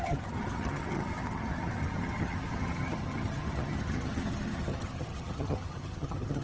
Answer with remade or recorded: remade